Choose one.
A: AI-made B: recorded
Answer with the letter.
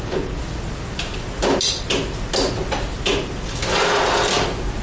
B